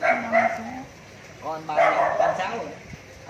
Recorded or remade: recorded